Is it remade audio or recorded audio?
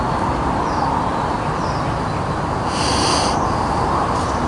recorded